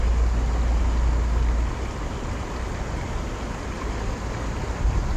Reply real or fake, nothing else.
real